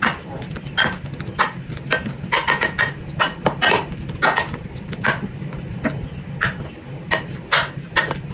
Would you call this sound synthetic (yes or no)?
no